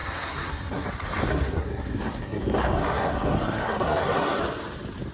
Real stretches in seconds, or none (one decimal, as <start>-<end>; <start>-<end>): 0.9-1.3; 4.4-5.1